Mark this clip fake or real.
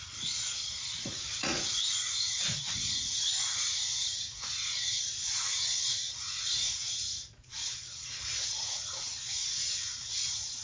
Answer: fake